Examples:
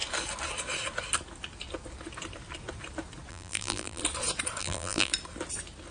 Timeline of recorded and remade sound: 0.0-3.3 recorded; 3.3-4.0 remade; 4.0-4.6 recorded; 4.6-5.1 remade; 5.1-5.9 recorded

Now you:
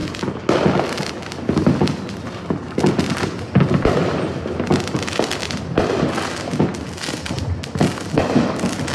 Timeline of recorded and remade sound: 0.0-8.9 recorded

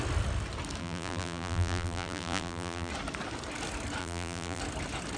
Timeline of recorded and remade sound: 0.0-0.8 recorded; 0.8-2.9 remade; 2.9-4.0 recorded; 4.0-4.6 remade; 4.6-5.2 recorded

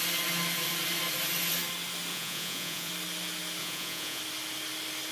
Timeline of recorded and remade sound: 0.0-2.1 recorded; 2.1-2.9 remade; 2.9-3.6 recorded; 3.6-4.2 remade; 4.2-5.1 recorded

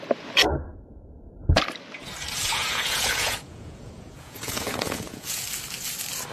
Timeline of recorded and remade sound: 0.0-0.7 recorded; 0.7-1.3 remade; 1.3-2.4 recorded; 2.4-5.4 remade; 5.4-6.3 recorded